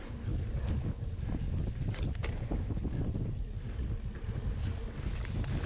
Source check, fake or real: real